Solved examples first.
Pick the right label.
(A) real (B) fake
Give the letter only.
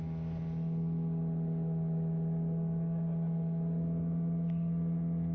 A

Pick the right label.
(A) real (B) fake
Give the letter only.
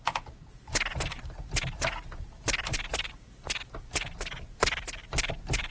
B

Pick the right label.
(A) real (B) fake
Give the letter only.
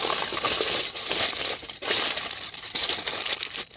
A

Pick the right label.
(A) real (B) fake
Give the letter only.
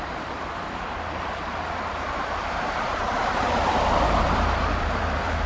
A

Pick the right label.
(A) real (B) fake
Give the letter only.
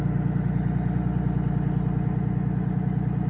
A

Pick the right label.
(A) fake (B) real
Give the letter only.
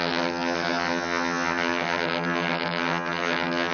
A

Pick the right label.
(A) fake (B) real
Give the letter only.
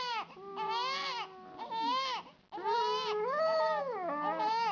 B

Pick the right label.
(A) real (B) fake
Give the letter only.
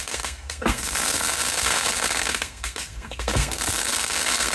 B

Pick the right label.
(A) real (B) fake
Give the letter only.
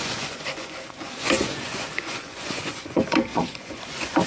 B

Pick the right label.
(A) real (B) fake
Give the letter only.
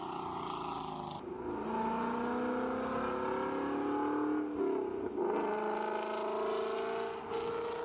A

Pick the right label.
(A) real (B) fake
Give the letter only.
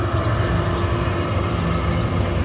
A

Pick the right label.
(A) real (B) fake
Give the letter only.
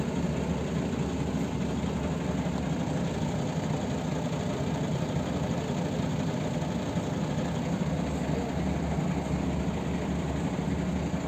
A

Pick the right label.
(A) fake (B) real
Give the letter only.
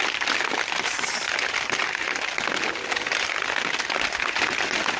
B